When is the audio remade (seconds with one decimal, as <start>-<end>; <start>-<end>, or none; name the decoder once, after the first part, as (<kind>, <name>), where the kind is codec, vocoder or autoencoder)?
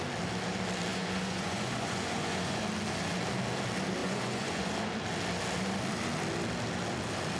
0.9-2.6 (vocoder, Vocos); 4.0-4.7